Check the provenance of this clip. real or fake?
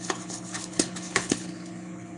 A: fake